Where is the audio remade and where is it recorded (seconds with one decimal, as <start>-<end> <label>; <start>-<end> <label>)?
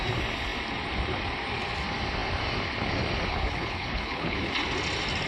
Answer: 0.0-3.3 recorded; 3.3-4.5 remade; 4.5-5.3 recorded